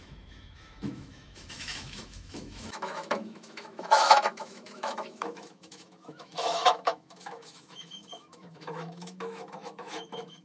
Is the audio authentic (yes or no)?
no